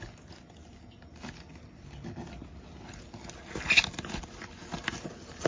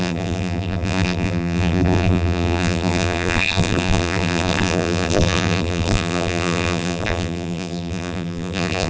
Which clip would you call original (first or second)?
first